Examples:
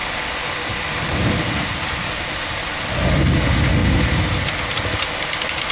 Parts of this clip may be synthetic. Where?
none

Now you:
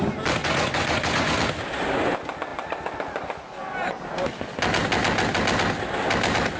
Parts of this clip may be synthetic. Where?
0.4-1.4 (vocoder, Vocos)

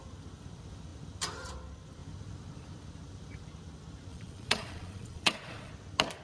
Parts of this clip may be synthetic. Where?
4.1-5.7 (vocoder, Vocos)